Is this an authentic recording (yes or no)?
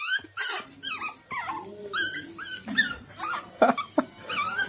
yes